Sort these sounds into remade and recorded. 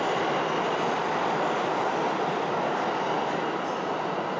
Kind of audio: recorded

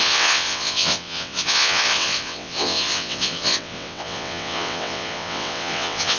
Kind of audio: remade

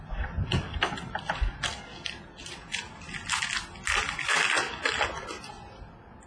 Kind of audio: recorded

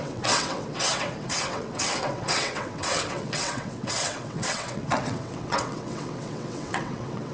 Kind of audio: remade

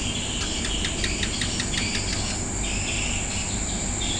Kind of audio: recorded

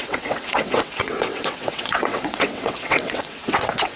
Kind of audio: remade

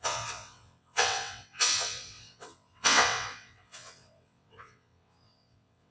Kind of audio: remade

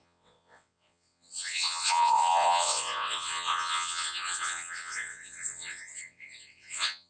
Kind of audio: remade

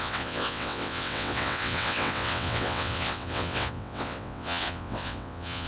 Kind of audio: remade